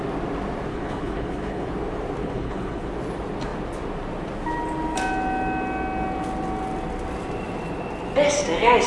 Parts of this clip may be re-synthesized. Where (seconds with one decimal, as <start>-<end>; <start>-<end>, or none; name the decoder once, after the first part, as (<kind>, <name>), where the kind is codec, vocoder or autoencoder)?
0.7-1.7 (codec, HILCodec); 2.2-2.9